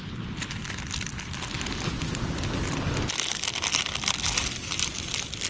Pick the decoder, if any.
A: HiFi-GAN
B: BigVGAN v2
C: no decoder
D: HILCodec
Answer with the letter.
C